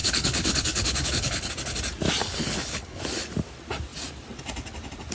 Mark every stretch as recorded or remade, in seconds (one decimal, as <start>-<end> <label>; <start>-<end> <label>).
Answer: 0.0-1.5 remade; 1.5-2.2 recorded; 2.2-3.0 remade; 3.0-5.1 recorded